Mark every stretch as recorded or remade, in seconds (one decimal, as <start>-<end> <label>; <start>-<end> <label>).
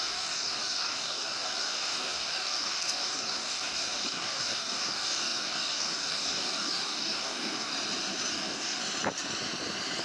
0.0-7.7 remade; 7.7-8.3 recorded; 8.3-8.8 remade; 8.8-10.0 recorded